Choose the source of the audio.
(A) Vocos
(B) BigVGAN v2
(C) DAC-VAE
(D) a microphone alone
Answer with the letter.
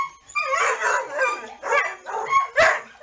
D